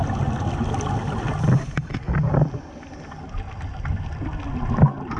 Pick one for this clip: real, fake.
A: real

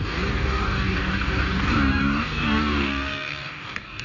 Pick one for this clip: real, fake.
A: fake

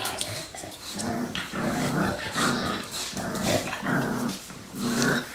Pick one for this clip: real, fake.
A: fake